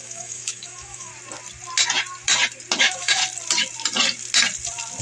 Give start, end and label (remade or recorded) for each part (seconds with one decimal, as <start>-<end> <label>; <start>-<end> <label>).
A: 0.0-1.1 remade; 1.1-2.8 recorded; 2.8-3.2 remade; 3.2-5.0 recorded